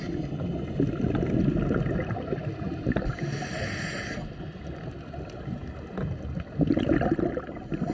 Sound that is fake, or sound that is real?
real